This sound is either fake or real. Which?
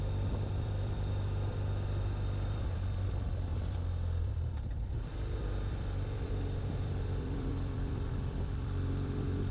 fake